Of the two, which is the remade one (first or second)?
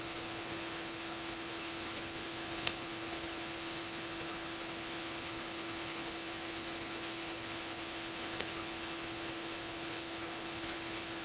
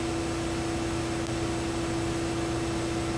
first